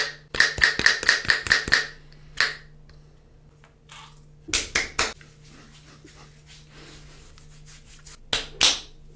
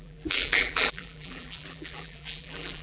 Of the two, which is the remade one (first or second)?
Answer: second